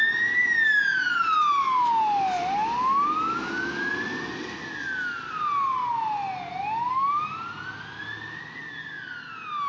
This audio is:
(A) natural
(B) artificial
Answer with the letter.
A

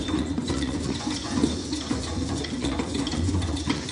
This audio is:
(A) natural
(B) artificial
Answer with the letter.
B